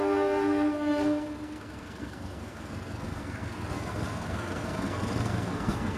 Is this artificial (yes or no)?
yes